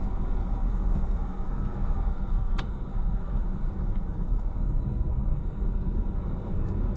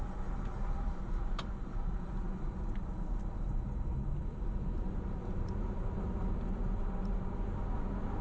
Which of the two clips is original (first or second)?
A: second